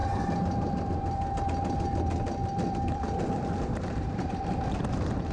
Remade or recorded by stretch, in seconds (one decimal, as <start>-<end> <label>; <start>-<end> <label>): 0.0-2.4 recorded; 2.4-4.3 remade; 4.3-5.3 recorded